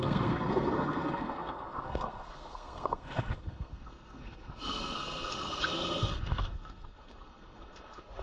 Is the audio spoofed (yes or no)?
yes